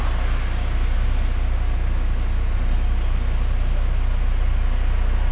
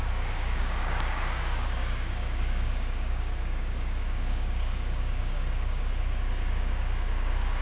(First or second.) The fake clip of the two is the second